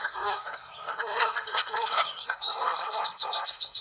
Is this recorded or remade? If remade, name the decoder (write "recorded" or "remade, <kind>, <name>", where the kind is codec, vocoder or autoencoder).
remade, codec, SNAC